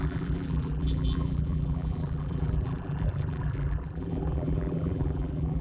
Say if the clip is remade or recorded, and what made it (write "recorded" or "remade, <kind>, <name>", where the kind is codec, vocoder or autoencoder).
remade, vocoder, BigVGAN v2